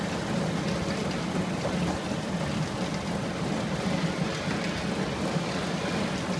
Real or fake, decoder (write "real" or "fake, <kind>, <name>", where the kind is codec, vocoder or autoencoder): real